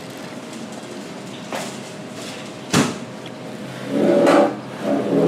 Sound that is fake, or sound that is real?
real